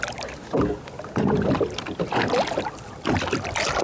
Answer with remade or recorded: recorded